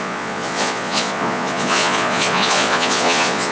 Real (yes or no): no